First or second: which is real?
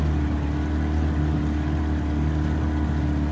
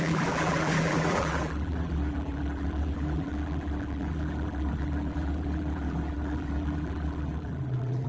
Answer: first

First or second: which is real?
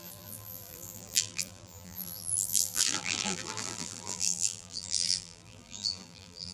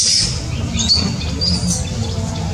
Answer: second